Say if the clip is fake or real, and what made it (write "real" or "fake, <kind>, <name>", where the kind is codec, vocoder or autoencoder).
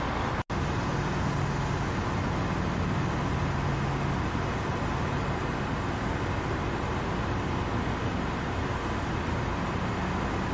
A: real